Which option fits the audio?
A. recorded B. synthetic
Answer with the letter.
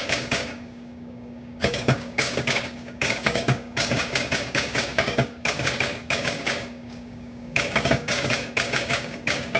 B